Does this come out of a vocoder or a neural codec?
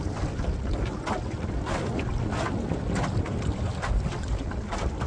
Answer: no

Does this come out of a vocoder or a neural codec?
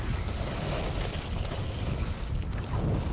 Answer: no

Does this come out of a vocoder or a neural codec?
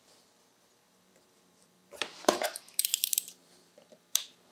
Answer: yes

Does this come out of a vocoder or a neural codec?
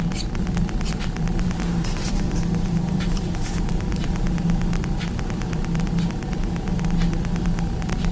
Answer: yes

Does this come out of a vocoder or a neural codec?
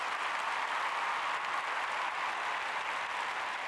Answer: no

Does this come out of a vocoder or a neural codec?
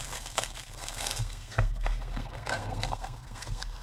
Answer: yes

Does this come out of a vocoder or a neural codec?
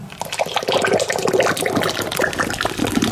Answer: no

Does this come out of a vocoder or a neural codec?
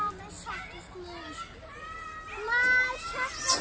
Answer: no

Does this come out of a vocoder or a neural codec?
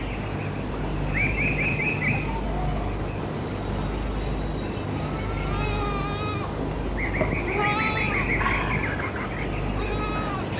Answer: no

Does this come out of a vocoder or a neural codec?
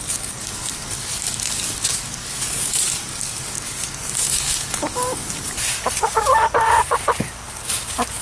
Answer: yes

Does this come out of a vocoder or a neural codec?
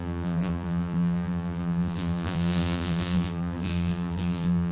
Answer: yes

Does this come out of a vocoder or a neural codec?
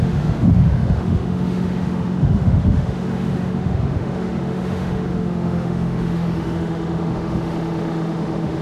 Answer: yes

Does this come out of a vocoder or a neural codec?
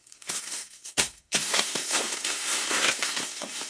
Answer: yes